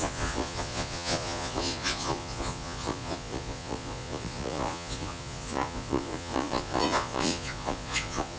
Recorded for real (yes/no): no